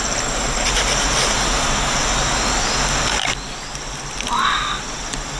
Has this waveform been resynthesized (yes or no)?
no